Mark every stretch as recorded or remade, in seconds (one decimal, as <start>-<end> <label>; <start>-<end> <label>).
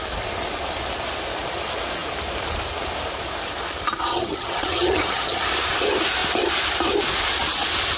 0.0-4.1 recorded; 4.1-5.4 remade; 5.4-8.0 recorded